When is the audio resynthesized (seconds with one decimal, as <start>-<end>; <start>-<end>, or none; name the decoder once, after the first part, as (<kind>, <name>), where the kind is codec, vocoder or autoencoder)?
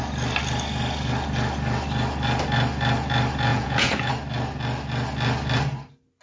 3.5-4.1 (vocoder, Vocos)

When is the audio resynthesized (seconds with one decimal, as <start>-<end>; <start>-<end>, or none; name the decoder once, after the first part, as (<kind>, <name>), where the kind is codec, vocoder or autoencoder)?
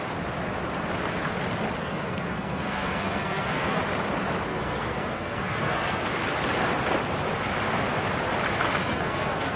1.8-3.8 (codec, SNAC); 4.5-6.0; 8.8-9.6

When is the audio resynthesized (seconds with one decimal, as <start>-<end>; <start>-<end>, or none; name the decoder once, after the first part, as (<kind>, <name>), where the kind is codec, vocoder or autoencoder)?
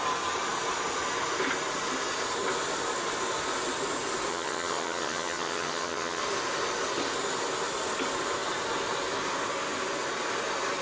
4.3-6.2 (vocoder, HiFi-GAN)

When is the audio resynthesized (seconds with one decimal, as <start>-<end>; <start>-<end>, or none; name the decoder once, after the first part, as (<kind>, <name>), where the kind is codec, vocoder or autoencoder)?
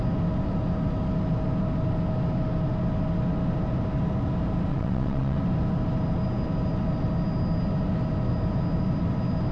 4.7-5.4 (vocoder, WaveNeXt)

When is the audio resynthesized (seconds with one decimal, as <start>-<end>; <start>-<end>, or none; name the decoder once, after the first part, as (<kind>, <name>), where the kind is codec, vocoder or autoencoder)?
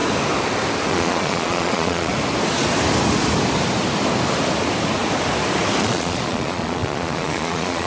0.9-2.1 (vocoder, Vocos); 5.8-7.9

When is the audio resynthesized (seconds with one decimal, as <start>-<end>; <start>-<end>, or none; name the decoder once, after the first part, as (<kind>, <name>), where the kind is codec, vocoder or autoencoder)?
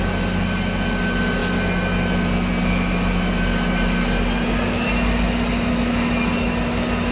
none